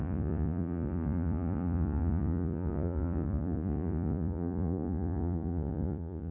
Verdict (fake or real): fake